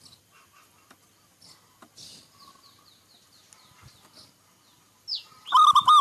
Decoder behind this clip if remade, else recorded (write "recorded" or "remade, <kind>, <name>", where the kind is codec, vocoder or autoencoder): recorded